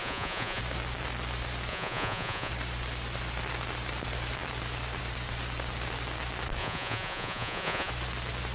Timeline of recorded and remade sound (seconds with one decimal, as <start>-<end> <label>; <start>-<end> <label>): 0.0-0.6 remade; 0.6-1.7 recorded; 1.7-2.5 remade; 2.5-6.6 recorded; 6.6-7.9 remade; 7.9-8.5 recorded